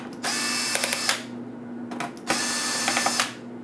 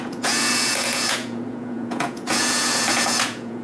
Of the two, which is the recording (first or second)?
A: first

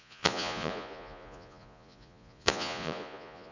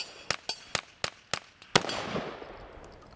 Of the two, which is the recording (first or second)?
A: second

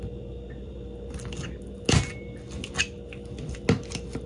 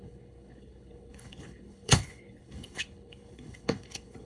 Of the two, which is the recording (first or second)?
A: first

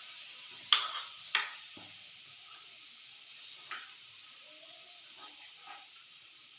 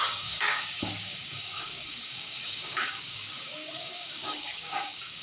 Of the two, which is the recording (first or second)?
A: first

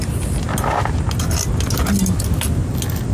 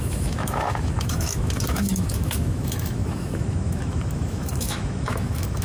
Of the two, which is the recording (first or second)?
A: first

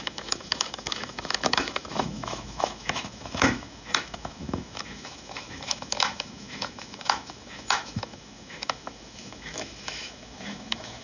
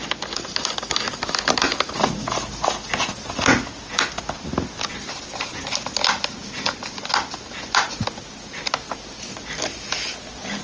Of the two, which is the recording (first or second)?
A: second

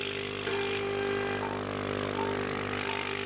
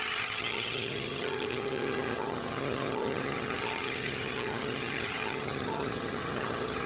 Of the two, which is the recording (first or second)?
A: first